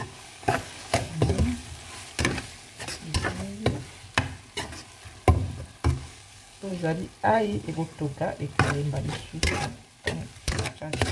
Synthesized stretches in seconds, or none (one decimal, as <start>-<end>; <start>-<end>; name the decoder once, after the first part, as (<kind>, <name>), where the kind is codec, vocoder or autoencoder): 0.0-1.6 (codec, DAC); 5.9-6.7; 7.3-7.9; 10.4-11.1